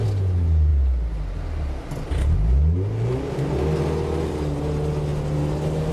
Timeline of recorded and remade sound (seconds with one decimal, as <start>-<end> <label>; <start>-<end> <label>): 0.0-5.9 recorded